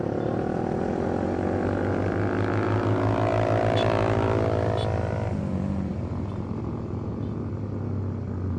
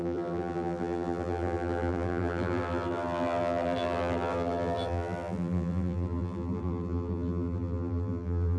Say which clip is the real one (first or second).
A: first